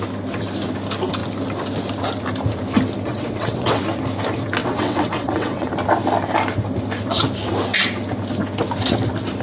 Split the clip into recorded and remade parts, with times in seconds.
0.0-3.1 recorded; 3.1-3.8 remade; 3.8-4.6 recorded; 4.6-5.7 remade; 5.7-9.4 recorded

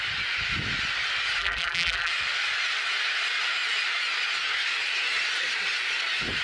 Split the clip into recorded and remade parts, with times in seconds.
0.0-1.4 recorded; 1.4-2.1 remade; 2.1-6.4 recorded

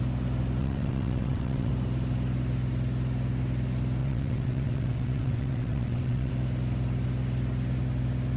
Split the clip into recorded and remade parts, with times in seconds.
0.0-0.6 recorded; 0.6-1.7 remade; 1.7-4.0 recorded; 4.0-6.3 remade; 6.3-8.4 recorded

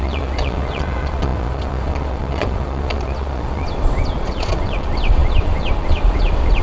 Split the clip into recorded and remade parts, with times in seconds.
0.0-6.6 remade

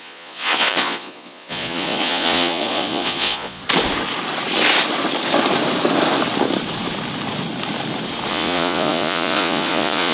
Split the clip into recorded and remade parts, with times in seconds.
0.0-3.6 remade; 3.6-8.3 recorded; 8.3-10.1 remade

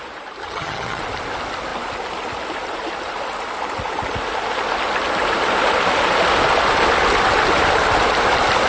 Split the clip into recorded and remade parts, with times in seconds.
0.0-0.4 recorded; 0.4-1.0 remade; 1.0-8.7 recorded

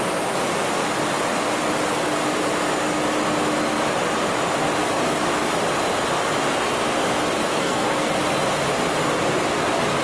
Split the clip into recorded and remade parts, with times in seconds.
0.0-7.5 recorded; 7.5-8.1 remade; 8.1-10.0 recorded

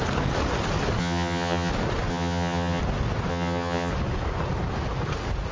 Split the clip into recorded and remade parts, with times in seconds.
0.0-1.0 recorded; 1.0-1.7 remade; 1.7-2.1 recorded; 2.1-2.8 remade; 2.8-3.3 recorded; 3.3-3.9 remade; 3.9-5.5 recorded